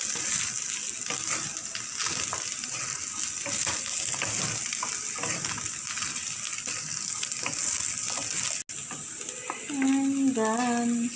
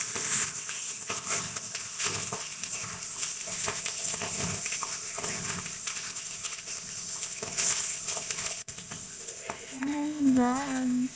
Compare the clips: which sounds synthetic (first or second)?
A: second